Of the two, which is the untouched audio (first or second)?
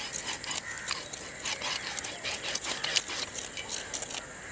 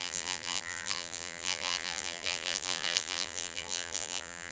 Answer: first